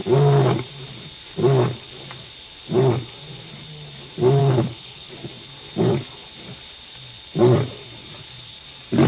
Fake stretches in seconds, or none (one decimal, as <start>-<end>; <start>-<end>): 4.4-5.1